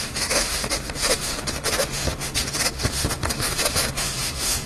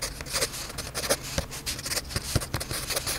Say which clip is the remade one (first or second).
first